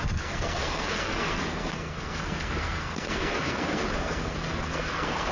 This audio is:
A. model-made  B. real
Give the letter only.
A